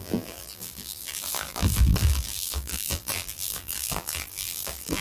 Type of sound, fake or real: fake